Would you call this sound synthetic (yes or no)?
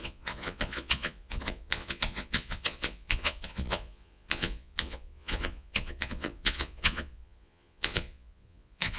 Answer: yes